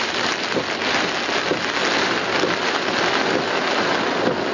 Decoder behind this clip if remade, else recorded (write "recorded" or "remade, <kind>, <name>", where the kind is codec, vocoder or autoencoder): recorded